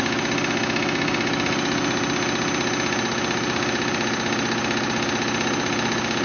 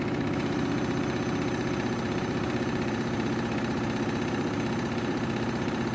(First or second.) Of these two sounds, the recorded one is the first